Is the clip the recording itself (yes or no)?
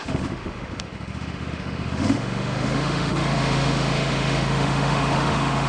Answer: no